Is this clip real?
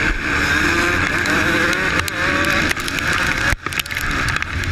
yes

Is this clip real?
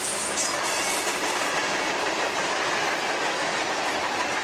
yes